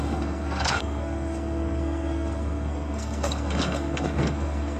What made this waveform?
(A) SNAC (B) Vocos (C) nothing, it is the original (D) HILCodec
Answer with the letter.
A